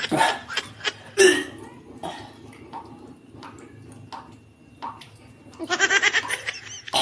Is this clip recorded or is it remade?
recorded